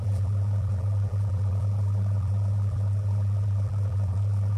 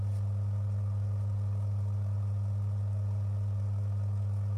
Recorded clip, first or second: second